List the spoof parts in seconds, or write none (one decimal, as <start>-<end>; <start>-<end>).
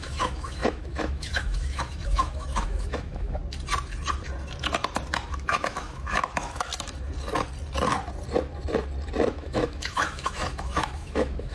0.0-3.4; 5.3-6.7; 9.3-11.5